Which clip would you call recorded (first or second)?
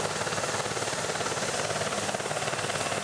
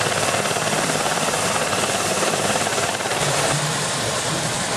first